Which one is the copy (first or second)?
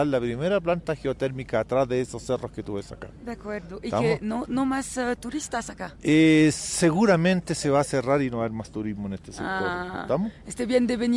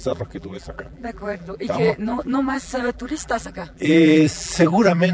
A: second